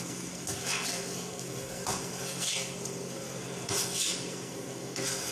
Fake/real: fake